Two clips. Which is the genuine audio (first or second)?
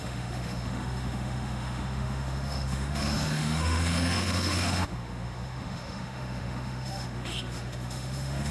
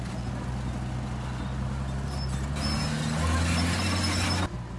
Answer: second